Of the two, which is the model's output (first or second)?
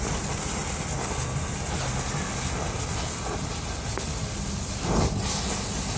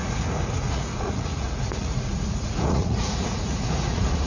second